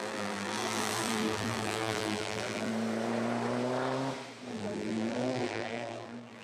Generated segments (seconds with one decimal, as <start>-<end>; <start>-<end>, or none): 0.0-2.7; 4.5-6.4